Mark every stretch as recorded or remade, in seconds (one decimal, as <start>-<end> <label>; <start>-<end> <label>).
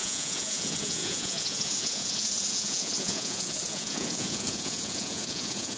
0.0-5.8 remade